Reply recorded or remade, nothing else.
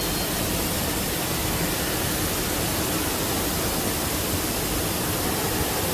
recorded